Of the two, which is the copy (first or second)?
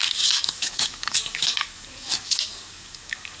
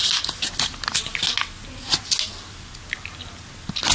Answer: first